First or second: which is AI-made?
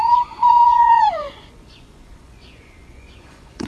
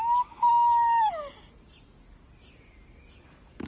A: first